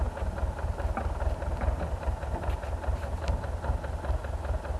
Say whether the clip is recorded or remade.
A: recorded